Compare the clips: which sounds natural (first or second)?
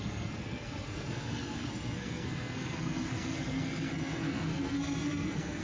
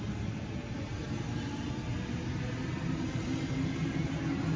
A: second